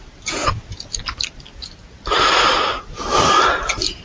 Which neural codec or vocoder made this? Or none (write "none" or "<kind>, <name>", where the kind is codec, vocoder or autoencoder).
none